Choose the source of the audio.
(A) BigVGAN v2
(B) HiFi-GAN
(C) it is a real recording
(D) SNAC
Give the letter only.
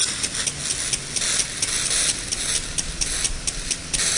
C